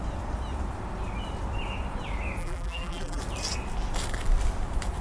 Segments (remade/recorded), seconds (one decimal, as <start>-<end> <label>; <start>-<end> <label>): 0.0-2.4 recorded; 2.4-3.2 remade; 3.2-5.0 recorded